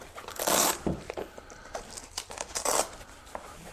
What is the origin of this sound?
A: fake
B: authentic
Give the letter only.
A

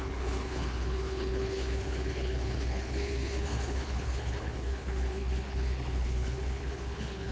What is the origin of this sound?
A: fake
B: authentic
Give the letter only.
A